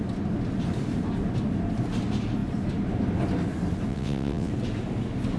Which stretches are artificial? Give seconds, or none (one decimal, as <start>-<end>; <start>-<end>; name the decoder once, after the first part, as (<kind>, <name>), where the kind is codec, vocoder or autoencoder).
3.9-4.5 (vocoder, WaveNeXt)